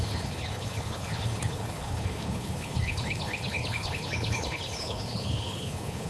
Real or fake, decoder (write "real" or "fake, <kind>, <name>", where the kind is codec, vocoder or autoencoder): fake, codec, HILCodec